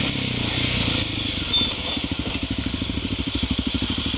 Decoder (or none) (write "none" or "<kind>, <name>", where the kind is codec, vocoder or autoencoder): none